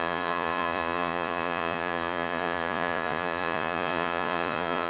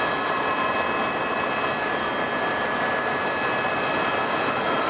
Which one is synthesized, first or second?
first